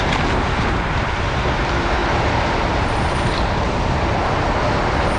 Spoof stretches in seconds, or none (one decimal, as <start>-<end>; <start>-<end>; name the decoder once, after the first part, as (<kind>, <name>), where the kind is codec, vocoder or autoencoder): 0.0-5.2 (vocoder, BigVGAN v2)